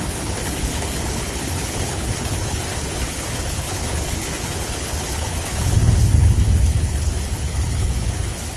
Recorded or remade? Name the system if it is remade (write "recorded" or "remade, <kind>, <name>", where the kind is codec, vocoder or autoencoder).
remade, codec, HILCodec